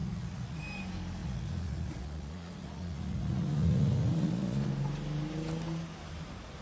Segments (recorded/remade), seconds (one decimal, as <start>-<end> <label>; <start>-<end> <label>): 0.0-0.6 remade; 0.6-1.2 recorded; 1.2-4.7 remade; 4.7-6.6 recorded